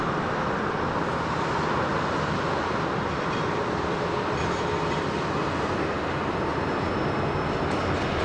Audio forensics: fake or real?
real